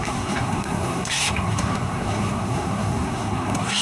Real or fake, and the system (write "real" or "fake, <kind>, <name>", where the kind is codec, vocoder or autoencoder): fake, codec, SNAC